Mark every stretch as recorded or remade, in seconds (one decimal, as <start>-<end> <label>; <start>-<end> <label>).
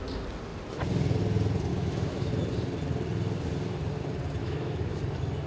0.0-1.7 recorded; 1.7-2.3 remade; 2.3-4.4 recorded; 4.4-5.0 remade; 5.0-5.5 recorded